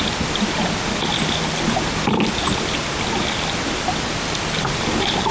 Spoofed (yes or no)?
no